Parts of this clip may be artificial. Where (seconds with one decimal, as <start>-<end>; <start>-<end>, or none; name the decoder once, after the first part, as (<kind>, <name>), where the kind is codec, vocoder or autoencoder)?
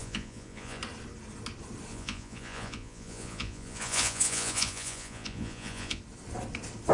0.0-0.8 (vocoder, Vocos); 1.9-6.0